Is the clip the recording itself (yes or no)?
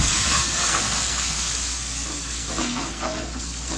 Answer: no